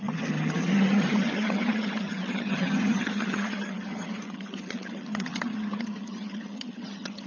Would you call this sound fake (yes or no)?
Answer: yes